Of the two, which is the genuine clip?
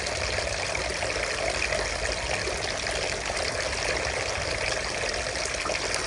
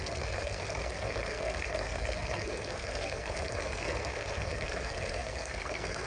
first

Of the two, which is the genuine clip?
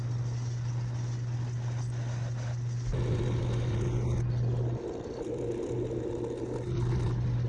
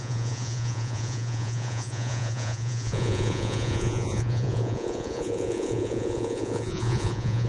first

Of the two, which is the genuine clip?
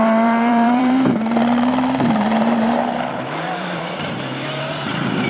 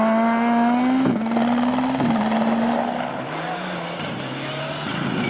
second